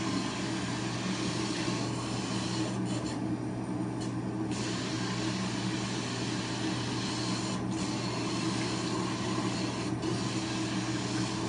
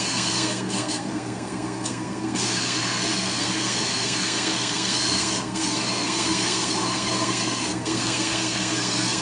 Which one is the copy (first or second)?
second